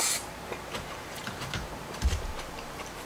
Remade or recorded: remade